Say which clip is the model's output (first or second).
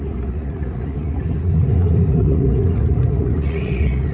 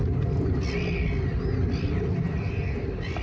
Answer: first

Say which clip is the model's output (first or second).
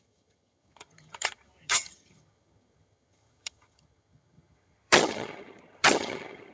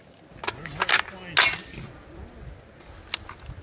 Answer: first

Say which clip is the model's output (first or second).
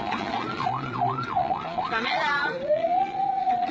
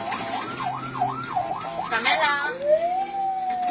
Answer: first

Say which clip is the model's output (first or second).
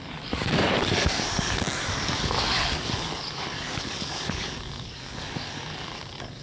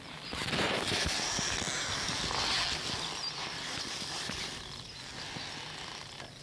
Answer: first